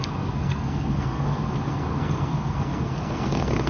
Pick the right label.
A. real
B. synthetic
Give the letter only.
B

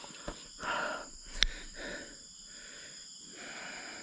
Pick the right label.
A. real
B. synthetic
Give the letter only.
A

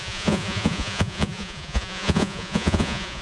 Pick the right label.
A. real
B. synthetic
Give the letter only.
B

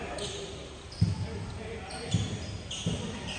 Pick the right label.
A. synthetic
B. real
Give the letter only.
B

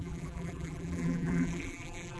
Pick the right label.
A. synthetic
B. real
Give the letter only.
A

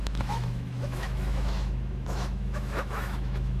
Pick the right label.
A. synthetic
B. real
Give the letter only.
A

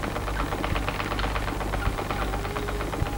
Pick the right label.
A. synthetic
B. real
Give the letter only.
B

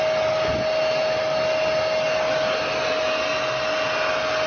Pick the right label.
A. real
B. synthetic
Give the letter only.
A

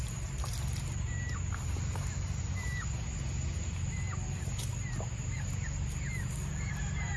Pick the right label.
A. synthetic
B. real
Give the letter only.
B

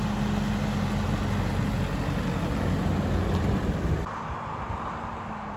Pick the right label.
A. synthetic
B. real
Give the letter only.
B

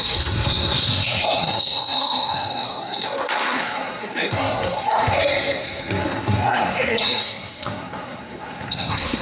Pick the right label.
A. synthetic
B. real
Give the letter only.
A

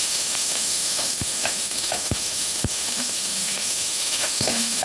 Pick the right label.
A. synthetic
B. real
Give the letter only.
A